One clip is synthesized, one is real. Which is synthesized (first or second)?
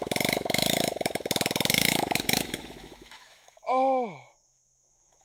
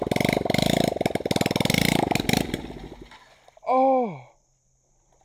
first